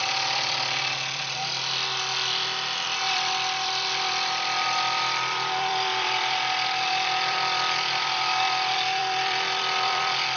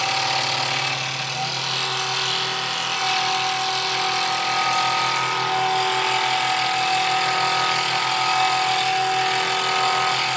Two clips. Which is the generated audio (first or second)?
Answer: first